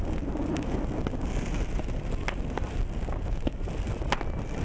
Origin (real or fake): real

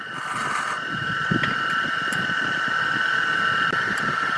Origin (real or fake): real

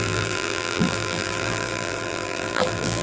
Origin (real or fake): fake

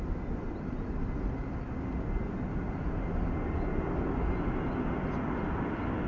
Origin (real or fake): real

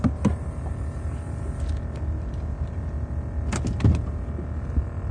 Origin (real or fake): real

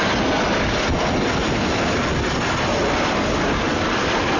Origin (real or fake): real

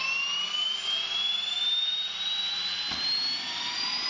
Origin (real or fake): real